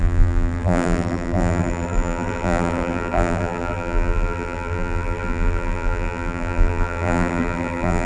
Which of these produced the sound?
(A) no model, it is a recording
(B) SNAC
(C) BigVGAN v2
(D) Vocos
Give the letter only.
C